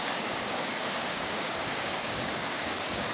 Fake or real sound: fake